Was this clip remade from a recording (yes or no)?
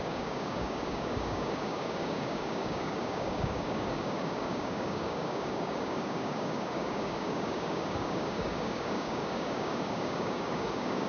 yes